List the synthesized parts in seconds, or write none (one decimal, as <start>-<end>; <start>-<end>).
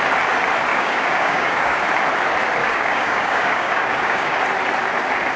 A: 0.7-1.8; 2.6-4.4